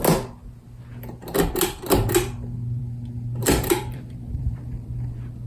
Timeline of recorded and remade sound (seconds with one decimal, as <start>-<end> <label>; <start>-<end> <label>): 0.0-3.4 recorded; 3.4-5.1 remade; 5.1-5.5 recorded